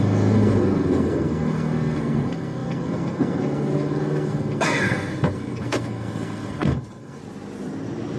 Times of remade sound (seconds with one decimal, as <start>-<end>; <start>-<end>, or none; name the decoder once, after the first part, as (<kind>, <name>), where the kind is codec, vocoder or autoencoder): 0.0-7.2 (codec, SNAC)